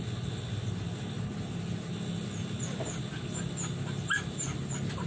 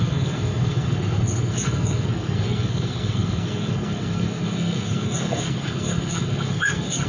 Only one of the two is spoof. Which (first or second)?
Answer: second